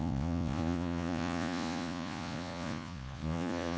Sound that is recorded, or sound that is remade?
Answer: remade